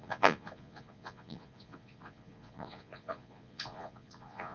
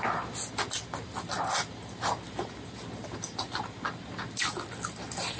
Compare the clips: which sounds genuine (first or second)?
second